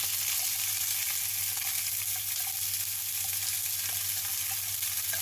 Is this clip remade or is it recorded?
recorded